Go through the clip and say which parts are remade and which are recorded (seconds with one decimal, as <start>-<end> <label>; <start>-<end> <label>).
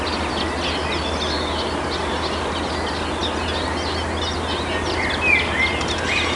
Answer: 0.0-6.4 recorded